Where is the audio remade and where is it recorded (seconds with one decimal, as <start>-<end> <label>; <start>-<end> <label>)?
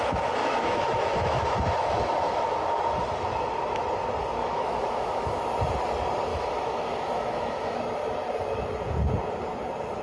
0.0-0.4 recorded; 0.4-2.4 remade; 2.4-4.4 recorded; 4.4-5.4 remade; 5.4-6.3 recorded; 6.3-7.8 remade; 7.8-10.0 recorded